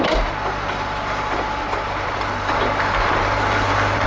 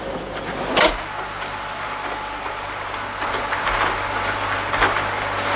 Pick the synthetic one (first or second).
first